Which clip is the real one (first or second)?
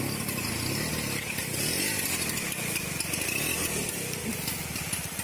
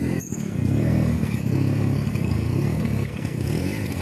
first